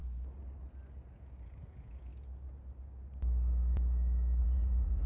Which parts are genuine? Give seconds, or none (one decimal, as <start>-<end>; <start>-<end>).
0.0-0.9; 2.1-4.4